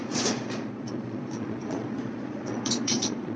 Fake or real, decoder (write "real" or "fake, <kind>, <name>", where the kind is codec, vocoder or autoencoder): fake, vocoder, Vocos